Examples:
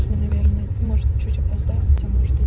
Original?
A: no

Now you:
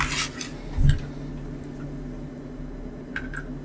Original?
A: yes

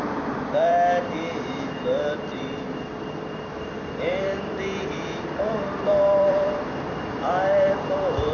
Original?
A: no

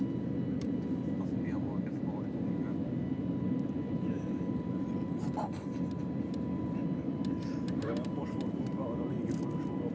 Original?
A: no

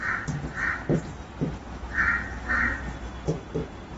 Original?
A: yes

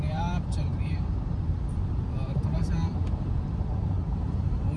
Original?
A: no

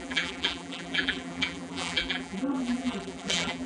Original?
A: no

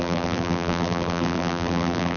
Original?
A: no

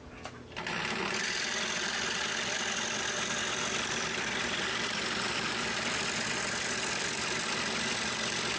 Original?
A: no